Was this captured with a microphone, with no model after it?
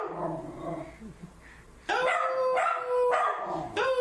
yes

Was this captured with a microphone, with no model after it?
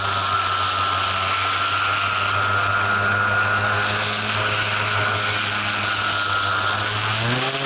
yes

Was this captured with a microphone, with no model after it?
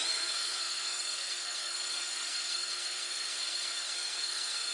no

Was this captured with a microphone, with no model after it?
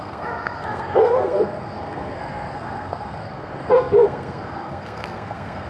no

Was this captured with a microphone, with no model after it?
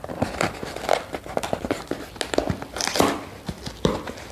yes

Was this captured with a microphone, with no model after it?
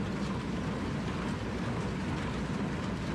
yes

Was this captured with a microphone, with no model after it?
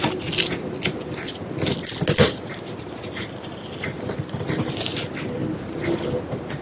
yes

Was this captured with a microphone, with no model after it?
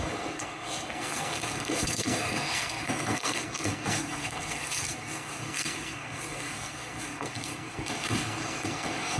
no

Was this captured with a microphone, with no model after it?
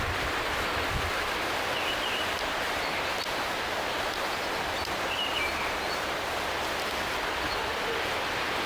yes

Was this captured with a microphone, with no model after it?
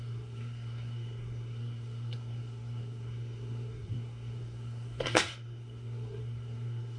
no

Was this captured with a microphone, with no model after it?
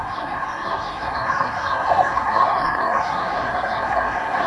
no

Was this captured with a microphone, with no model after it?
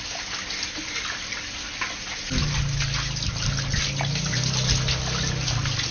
yes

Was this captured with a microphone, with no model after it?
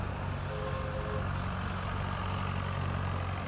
yes